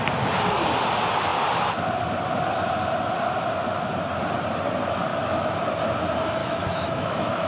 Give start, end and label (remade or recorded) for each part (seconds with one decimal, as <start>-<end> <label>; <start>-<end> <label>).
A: 0.0-5.1 recorded; 5.1-5.6 remade; 5.6-6.4 recorded; 6.4-7.5 remade